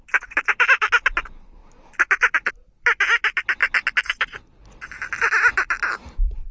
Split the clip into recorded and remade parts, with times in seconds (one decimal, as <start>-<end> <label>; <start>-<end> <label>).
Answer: 0.0-6.5 remade